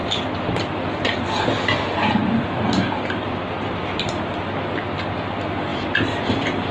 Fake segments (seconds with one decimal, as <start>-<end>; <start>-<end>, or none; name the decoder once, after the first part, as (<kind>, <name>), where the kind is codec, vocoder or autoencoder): 2.2-4.5 (vocoder, BigVGAN v2); 5.7-6.7